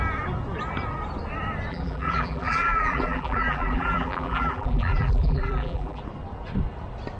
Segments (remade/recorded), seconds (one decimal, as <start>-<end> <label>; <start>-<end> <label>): 0.0-1.7 recorded; 1.7-6.0 remade; 6.0-7.2 recorded